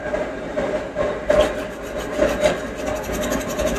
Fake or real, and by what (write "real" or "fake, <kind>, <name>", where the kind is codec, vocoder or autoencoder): real